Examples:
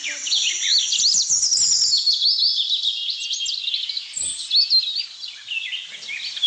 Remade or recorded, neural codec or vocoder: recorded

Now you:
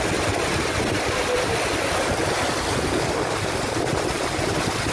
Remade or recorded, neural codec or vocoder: recorded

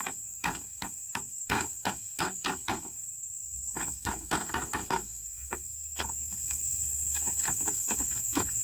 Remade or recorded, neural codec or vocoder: remade, codec, SNAC